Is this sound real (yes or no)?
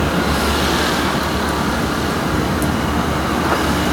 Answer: yes